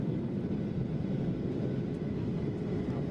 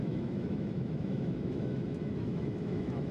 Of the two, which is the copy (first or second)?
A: second